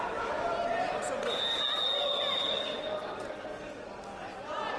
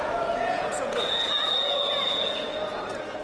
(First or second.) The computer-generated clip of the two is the second